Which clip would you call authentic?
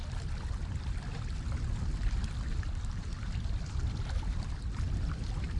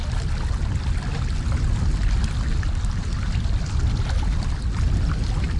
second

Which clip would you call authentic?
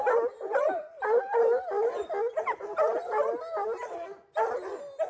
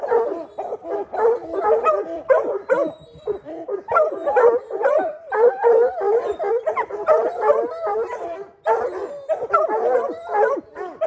first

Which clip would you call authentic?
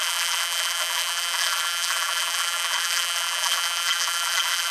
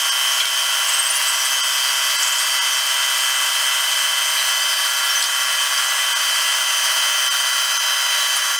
second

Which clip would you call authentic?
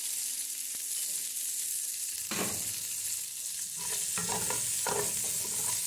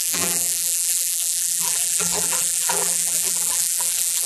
first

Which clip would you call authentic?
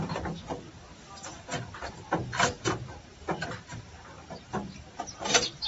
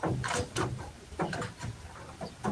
second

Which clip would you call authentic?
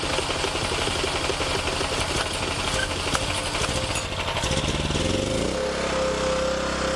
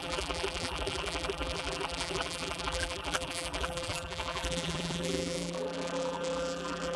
first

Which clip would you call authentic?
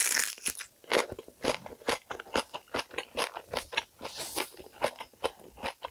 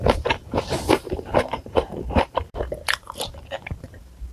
first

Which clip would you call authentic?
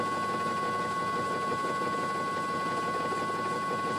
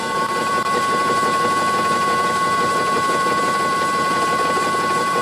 first